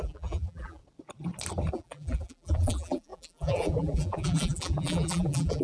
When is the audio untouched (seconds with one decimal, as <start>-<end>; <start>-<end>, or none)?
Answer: 0.8-1.7